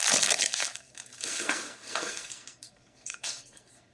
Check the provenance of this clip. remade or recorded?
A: remade